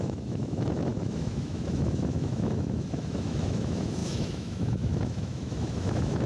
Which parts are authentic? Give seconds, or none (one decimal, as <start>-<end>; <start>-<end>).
none